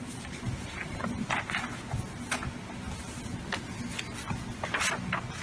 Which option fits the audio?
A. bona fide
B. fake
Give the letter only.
A